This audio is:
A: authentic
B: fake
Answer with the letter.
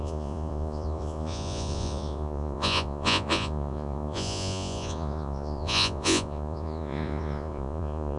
B